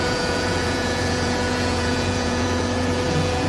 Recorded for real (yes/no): no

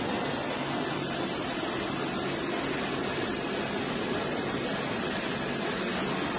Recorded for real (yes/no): yes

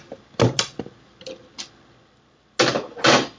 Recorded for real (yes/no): yes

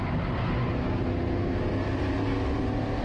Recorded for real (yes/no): yes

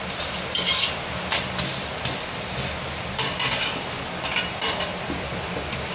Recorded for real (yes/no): no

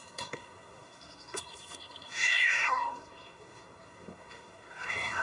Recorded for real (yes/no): no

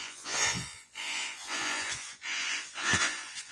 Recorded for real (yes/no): no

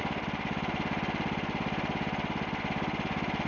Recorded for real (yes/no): yes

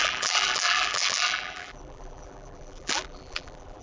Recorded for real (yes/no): no